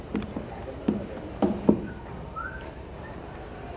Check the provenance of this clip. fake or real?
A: fake